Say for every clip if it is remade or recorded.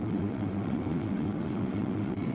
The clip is remade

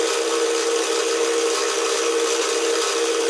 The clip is recorded